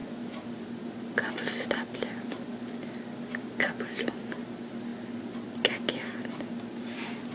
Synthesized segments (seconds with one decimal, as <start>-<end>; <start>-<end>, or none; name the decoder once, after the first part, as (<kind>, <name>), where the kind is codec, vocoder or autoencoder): none